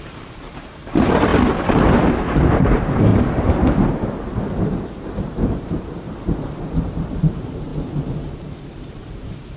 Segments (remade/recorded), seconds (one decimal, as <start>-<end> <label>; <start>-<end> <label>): 0.0-3.1 remade; 3.1-4.6 recorded; 4.6-7.7 remade; 7.7-8.3 recorded; 8.3-9.6 remade